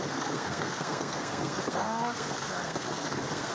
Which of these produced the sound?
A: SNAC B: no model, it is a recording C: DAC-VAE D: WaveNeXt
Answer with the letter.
A